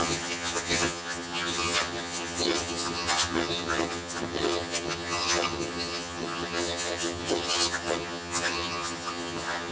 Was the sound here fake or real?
fake